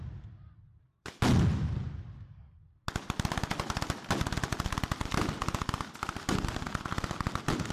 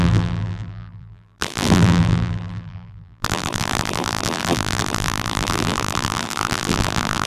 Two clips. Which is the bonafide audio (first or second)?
first